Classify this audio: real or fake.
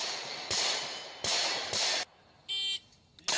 real